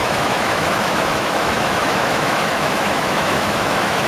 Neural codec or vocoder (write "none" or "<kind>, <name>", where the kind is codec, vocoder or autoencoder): autoencoder, DAC-VAE